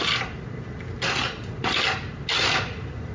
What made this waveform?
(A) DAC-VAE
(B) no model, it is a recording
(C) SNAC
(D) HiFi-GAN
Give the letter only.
B